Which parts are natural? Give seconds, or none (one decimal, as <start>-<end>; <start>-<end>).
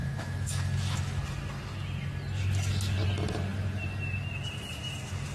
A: 1.2-5.3